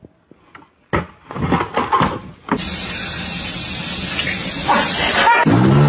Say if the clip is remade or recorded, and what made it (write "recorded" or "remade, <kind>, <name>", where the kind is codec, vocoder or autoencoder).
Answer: recorded